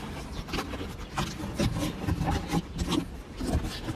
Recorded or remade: recorded